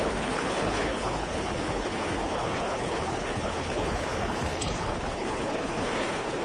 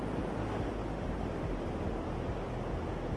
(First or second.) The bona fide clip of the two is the second